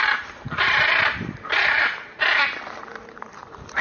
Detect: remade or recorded remade